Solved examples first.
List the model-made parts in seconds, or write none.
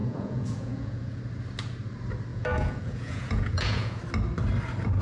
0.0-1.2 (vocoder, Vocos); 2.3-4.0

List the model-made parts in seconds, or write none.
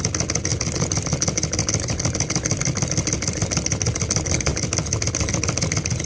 none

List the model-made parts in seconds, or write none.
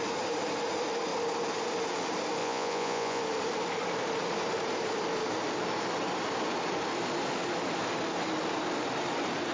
2.4-3.2 (vocoder, Vocos)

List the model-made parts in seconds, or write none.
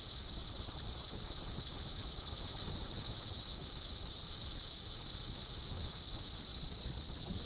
0.4-1.1 (vocoder, Vocos); 6.5-7.0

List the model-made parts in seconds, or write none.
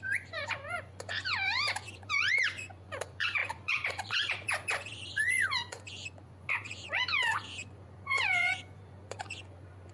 0.0-9.9 (vocoder, Vocos)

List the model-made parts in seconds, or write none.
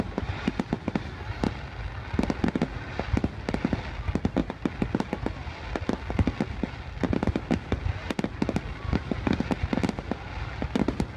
none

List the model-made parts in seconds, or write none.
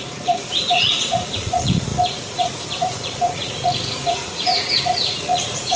0.0-5.8 (vocoder, Vocos)